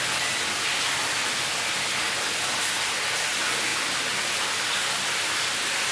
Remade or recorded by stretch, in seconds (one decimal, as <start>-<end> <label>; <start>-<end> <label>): 0.0-5.9 recorded